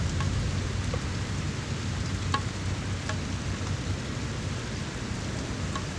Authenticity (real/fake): real